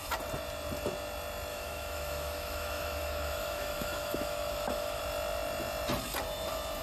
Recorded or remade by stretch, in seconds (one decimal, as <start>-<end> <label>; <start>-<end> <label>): 0.0-1.5 recorded; 1.5-5.0 remade; 5.0-6.8 recorded